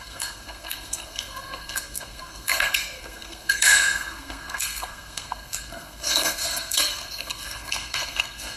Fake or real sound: fake